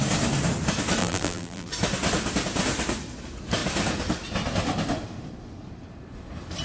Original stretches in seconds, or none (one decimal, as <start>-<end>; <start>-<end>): 0.0-1.0; 1.7-6.6